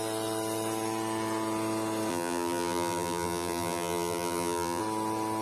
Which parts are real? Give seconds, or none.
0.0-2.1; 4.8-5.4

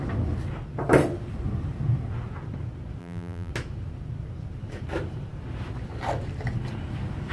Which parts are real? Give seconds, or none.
0.0-3.0; 3.5-7.3

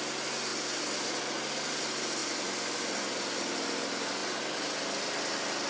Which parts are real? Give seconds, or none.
0.0-0.5; 1.8-2.2; 3.2-4.2; 4.8-5.7

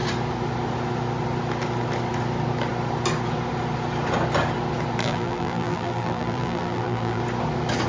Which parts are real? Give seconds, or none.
0.0-5.0; 7.2-7.9